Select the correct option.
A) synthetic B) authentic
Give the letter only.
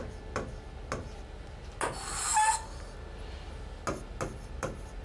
B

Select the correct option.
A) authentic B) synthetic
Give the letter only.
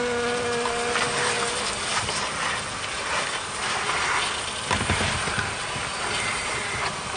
A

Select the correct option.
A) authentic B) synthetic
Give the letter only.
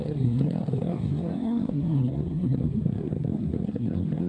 B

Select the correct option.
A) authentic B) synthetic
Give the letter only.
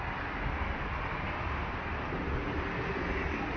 A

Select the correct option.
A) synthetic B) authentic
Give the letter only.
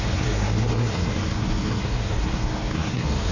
A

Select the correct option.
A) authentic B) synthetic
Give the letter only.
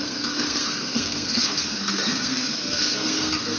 B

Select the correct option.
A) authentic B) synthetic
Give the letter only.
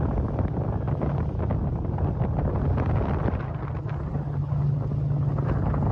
A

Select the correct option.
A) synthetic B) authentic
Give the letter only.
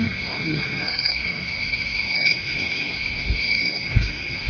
A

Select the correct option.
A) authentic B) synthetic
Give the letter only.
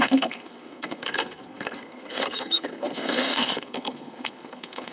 B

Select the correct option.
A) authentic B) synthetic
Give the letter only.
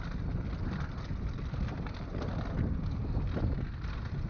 A